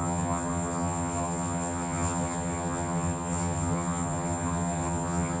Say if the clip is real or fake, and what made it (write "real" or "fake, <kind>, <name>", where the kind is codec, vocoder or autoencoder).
fake, vocoder, HiFi-GAN